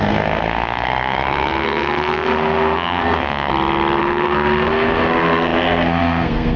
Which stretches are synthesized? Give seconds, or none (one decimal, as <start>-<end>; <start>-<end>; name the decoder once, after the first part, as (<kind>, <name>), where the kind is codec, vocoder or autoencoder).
0.0-3.5 (codec, SNAC); 4.0-6.6

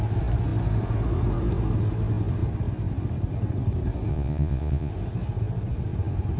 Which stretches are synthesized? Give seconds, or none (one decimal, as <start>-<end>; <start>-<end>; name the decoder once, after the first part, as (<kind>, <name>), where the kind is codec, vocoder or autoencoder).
4.1-4.9 (vocoder, Vocos)

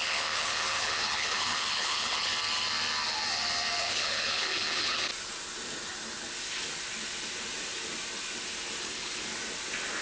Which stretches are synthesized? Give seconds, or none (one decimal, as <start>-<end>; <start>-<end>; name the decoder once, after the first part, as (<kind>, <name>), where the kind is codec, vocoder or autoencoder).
0.0-2.3 (codec, HILCodec); 3.8-5.1; 8.8-9.3

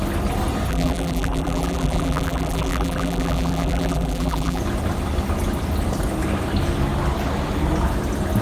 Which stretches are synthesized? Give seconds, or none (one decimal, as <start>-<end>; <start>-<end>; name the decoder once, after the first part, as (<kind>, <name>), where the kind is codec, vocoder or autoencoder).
0.7-4.6 (vocoder, BigVGAN v2)

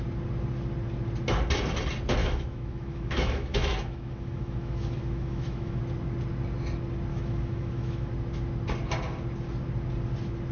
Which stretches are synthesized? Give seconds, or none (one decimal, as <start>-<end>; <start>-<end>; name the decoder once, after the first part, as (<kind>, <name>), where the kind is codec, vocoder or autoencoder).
2.2-5.8 (autoencoder, DAC-VAE); 7.1-8.1

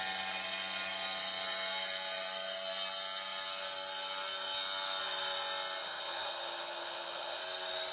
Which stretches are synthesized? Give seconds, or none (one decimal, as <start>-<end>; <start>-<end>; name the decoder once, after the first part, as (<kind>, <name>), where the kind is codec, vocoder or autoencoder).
5.8-7.4 (vocoder, HiFi-GAN)

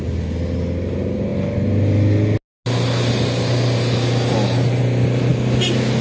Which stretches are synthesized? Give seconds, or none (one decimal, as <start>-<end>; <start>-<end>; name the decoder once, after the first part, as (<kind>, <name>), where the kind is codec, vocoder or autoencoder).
none

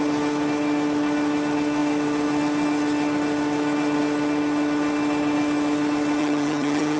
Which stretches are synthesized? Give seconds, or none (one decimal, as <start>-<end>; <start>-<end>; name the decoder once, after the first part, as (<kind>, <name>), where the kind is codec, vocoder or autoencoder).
6.2-7.0 (vocoder, HiFi-GAN)